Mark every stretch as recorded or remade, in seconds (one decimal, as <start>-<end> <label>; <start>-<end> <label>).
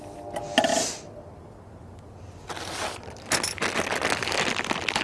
0.0-5.0 recorded